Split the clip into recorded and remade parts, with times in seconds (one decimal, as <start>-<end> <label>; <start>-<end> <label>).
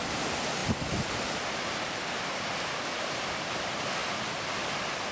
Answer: 0.0-5.1 recorded